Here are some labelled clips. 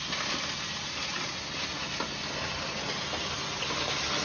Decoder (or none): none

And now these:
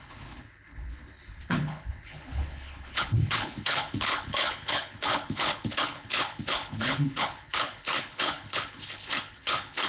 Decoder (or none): codec, HILCodec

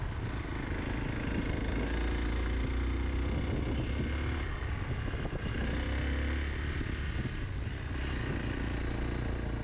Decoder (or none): none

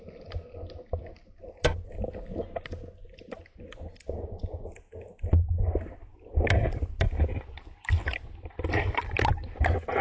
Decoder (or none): none